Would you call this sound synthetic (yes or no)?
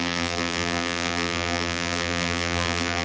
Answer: yes